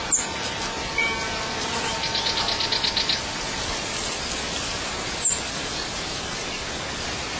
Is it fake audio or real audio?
real